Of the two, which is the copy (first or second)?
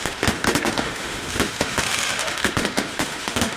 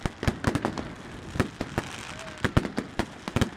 first